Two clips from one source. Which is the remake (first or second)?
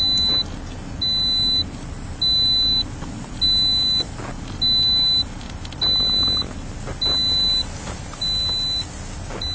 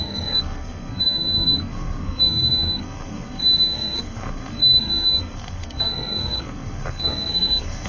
second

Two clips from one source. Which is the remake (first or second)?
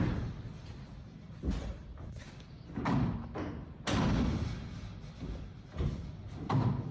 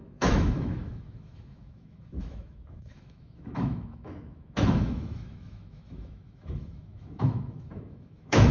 second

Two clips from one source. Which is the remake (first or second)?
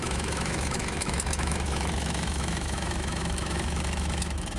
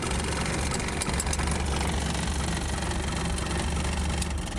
first